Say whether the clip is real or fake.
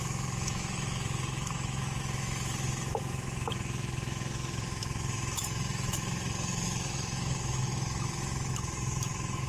fake